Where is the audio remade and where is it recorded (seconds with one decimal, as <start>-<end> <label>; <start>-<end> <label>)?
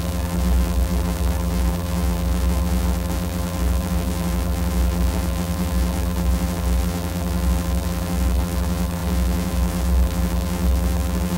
0.0-11.4 remade